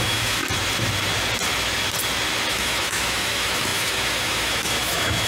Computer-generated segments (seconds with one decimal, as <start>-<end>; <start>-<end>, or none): 0.0-0.4; 2.5-5.3